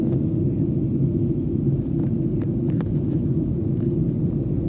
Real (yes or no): yes